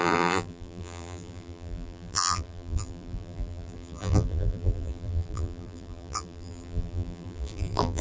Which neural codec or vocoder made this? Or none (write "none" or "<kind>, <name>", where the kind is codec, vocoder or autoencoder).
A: vocoder, BigVGAN v2